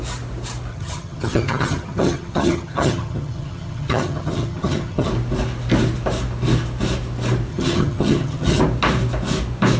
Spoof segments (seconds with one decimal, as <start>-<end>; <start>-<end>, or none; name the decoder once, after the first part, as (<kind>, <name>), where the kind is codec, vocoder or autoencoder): 0.7-5.1 (vocoder, HiFi-GAN); 7.5-8.6